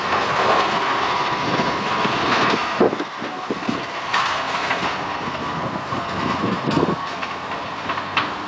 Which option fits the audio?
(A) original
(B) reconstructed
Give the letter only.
B